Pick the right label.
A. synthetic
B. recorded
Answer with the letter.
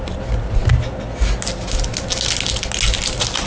B